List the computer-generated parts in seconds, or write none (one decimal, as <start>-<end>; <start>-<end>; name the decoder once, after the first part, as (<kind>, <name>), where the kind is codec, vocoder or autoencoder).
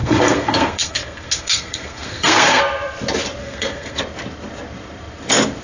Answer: 0.0-2.6 (codec, SNAC); 3.4-4.0